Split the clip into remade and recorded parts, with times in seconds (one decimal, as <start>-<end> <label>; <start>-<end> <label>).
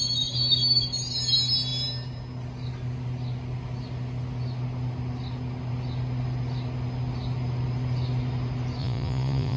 0.0-8.8 recorded; 8.8-9.6 remade